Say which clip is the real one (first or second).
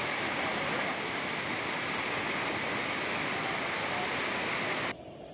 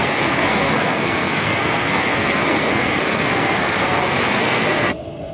first